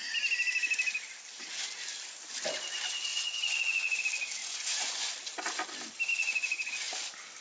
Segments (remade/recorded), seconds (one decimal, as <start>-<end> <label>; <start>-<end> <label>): 0.0-3.1 recorded; 3.1-4.0 remade; 4.0-4.4 recorded; 4.4-5.1 remade; 5.1-6.1 recorded; 6.1-6.7 remade; 6.7-7.4 recorded